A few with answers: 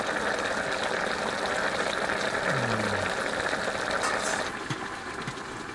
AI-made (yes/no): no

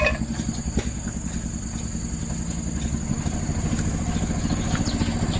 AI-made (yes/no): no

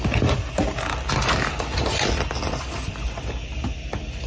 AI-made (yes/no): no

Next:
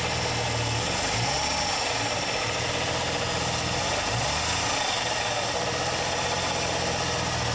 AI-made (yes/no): no